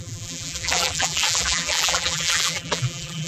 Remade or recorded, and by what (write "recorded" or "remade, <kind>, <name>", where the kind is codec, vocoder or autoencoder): remade, vocoder, BigVGAN v2